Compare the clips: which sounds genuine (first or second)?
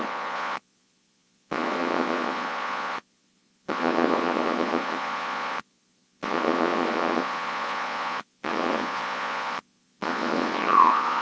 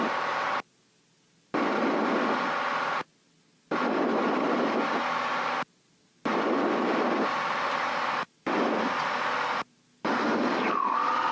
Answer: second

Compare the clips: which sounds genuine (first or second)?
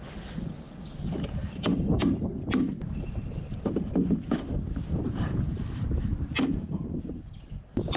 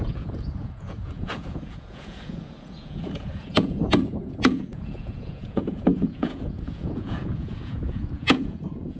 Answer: first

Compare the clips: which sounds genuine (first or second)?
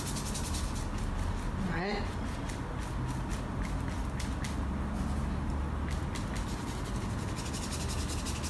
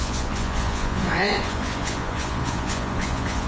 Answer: first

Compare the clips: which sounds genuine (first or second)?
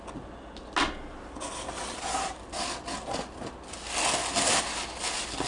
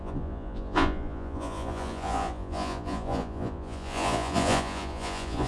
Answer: first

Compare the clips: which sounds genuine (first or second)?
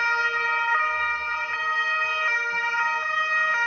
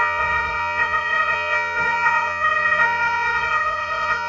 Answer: first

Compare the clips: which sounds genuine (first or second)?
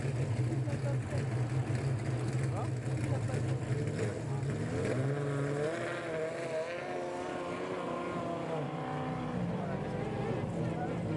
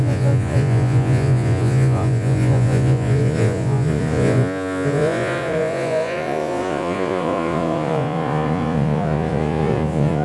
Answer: first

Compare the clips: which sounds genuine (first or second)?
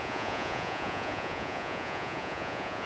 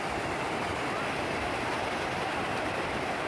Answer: second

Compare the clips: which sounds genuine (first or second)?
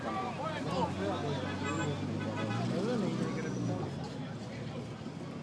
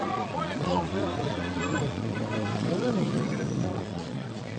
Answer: first